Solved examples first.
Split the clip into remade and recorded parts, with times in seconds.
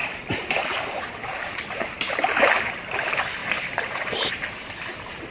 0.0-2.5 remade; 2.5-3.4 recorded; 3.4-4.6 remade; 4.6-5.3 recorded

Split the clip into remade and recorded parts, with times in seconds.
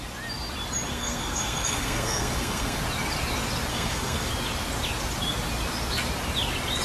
0.0-0.9 recorded; 0.9-2.8 remade; 2.8-3.7 recorded; 3.7-4.3 remade; 4.3-6.8 recorded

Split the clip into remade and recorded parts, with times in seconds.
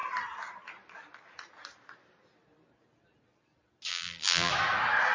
0.0-3.9 recorded; 3.9-4.5 remade; 4.5-5.1 recorded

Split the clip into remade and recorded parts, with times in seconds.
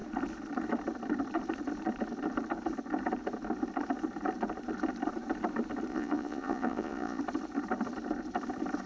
0.0-5.9 recorded; 5.9-7.2 remade; 7.2-8.9 recorded